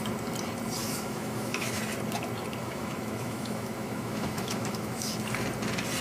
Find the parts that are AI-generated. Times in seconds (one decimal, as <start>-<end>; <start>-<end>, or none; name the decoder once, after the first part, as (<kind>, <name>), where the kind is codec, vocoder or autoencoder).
0.8-1.8 (autoencoder, DAC-VAE); 2.6-5.1

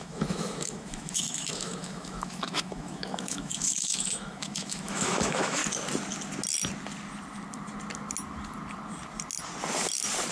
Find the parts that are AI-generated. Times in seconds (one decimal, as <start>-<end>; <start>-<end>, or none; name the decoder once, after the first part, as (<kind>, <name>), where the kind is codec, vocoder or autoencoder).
0.0-5.6 (autoencoder, DAC-VAE)

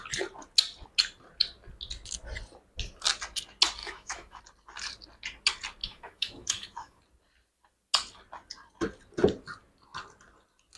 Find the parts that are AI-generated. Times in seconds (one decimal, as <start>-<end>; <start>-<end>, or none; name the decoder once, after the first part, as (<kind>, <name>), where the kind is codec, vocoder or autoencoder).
3.8-4.4 (autoencoder, DAC-VAE); 5.8-7.0